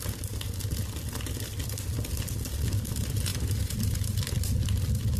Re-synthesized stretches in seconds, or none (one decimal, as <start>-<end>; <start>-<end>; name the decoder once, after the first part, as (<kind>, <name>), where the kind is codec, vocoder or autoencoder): 3.3-4.8 (vocoder, BigVGAN v2)